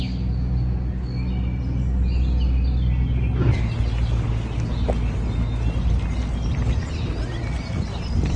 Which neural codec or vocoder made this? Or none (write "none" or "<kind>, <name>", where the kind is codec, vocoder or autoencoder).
none